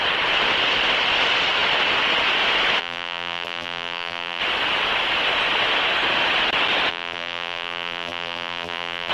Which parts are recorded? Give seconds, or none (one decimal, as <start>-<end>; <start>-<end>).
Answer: 0.0-2.8; 4.4-6.9